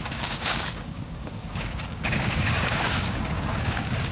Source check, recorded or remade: remade